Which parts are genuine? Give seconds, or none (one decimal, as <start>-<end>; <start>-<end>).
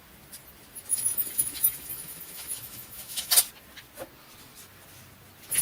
0.0-0.9; 3.3-5.6